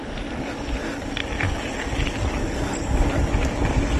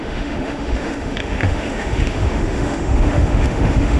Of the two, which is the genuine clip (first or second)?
first